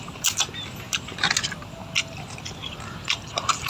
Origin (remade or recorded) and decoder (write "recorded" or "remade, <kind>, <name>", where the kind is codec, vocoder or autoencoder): recorded